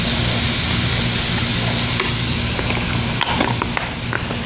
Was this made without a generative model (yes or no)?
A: yes